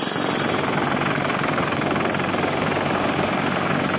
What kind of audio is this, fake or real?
real